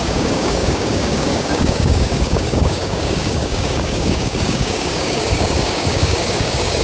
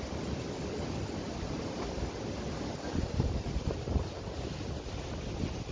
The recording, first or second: second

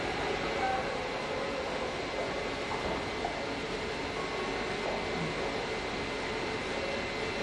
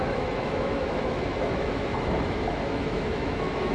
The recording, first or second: first